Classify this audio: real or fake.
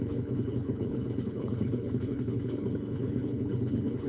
fake